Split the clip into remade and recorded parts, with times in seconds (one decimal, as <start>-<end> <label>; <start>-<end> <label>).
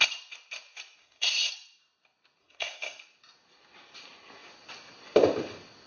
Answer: 0.0-1.0 recorded; 1.0-1.5 remade; 1.5-2.4 recorded; 2.4-3.0 remade; 3.0-5.9 recorded